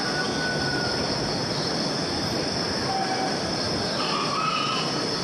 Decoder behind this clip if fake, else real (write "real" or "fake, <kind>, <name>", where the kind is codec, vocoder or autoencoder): real